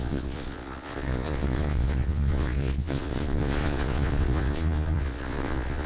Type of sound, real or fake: fake